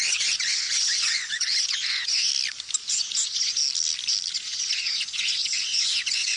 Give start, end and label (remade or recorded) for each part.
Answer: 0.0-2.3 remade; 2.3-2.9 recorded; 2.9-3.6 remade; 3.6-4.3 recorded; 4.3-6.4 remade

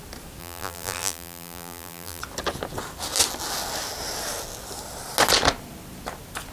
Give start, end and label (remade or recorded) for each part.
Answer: 0.0-0.4 recorded; 0.4-2.2 remade; 2.2-6.5 recorded

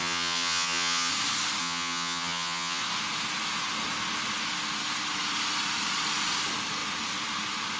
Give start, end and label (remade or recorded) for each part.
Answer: 0.0-1.1 remade; 1.1-1.6 recorded; 1.6-2.8 remade; 2.8-7.8 recorded

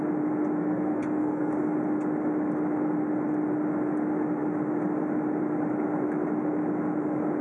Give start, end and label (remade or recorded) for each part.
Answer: 0.0-0.6 recorded; 0.6-1.5 remade; 1.5-7.4 recorded

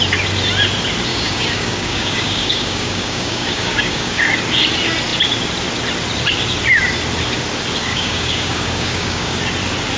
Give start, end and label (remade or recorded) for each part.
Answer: 0.0-1.1 recorded; 1.1-4.2 remade; 4.2-7.9 recorded; 7.9-9.4 remade; 9.4-10.0 recorded

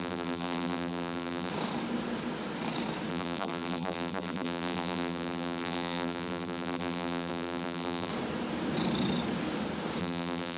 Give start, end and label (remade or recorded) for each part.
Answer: 0.0-1.5 remade; 1.5-3.1 recorded; 3.1-8.1 remade; 8.1-10.0 recorded; 10.0-10.6 remade

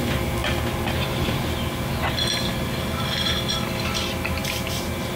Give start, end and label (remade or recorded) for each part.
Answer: 0.0-4.4 recorded; 4.4-5.2 remade

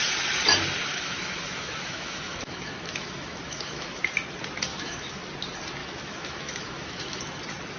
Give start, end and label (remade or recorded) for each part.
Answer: 0.0-0.9 recorded; 0.9-4.0 remade; 4.0-4.7 recorded; 4.7-5.3 remade; 5.3-5.8 recorded; 5.8-7.2 remade; 7.2-7.8 recorded